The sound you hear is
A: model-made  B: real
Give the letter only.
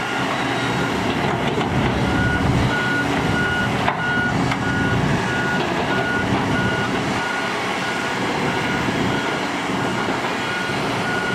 B